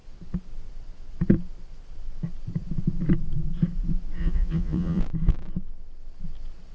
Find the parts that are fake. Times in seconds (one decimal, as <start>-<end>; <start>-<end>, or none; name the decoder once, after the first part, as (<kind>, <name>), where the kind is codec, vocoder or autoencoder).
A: 4.2-5.0 (vocoder, Vocos)